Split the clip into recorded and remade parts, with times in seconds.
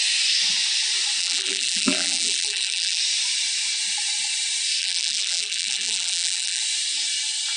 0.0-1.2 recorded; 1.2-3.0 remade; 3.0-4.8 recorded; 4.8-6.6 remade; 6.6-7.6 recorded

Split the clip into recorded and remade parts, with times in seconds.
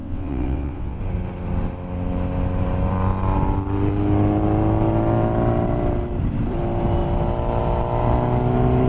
0.0-1.0 remade; 1.0-8.9 recorded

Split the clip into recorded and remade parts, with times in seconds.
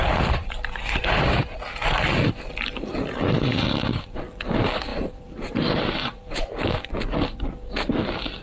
0.0-1.4 remade; 1.4-4.9 recorded; 4.9-6.8 remade; 6.8-8.4 recorded